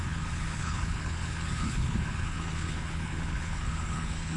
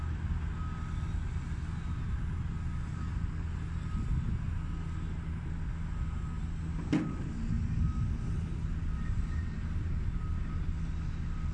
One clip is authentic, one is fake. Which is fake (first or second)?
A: first